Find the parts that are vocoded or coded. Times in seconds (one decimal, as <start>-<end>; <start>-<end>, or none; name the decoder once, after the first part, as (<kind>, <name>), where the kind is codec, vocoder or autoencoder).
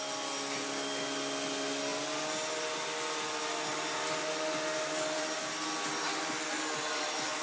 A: none